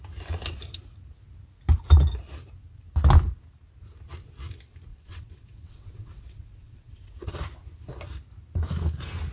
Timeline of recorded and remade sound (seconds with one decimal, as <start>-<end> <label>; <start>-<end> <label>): 0.0-4.9 recorded; 4.9-7.3 remade; 7.3-9.3 recorded